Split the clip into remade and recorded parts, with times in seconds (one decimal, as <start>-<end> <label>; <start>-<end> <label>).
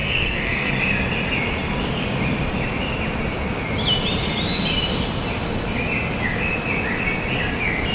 0.0-0.7 remade; 0.7-7.9 recorded